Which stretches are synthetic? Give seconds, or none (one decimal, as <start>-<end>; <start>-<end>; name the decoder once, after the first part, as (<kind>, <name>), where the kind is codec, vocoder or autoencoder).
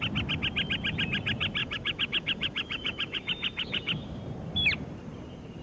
1.6-4.2 (autoencoder, DAC-VAE)